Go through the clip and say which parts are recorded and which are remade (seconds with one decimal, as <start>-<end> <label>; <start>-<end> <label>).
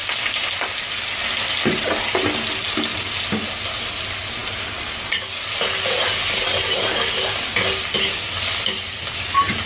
0.0-9.7 recorded